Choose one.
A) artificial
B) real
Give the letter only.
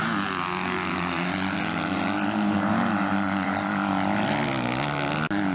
B